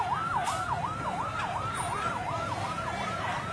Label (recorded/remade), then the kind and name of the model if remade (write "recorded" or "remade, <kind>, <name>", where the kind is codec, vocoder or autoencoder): remade, vocoder, BigVGAN v2